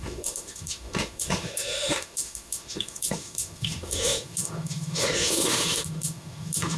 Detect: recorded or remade remade